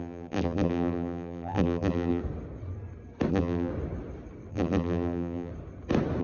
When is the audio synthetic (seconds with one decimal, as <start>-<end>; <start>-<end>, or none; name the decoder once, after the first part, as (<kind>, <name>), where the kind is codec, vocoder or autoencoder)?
0.0-2.2 (vocoder, BigVGAN v2); 3.3-3.7; 4.5-5.5